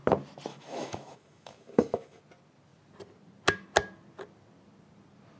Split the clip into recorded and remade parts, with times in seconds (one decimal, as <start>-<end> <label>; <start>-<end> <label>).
0.0-0.5 recorded; 0.5-2.2 remade; 2.2-5.4 recorded